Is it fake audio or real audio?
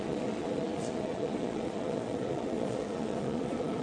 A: fake